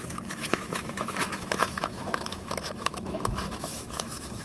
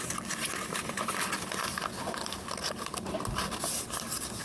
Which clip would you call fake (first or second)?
first